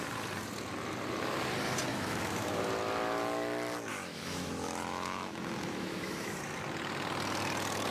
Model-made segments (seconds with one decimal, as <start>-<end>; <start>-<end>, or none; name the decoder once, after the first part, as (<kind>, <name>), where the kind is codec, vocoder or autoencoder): 1.9-2.6 (autoencoder, DAC-VAE); 3.9-6.3